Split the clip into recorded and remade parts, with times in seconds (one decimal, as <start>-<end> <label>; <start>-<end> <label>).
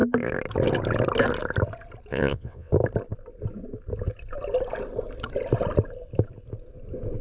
0.0-2.1 recorded; 2.1-2.7 remade; 2.7-7.2 recorded